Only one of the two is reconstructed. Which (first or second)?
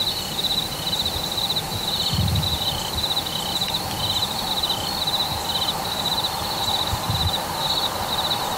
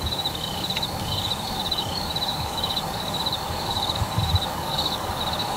second